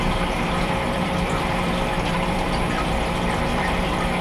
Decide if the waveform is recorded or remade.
remade